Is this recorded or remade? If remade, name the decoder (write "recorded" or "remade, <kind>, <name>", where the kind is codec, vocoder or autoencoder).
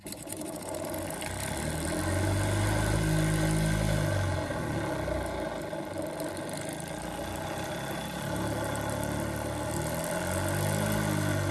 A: recorded